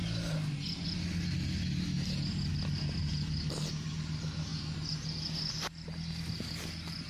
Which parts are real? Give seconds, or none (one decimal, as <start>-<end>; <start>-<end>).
0.0-7.1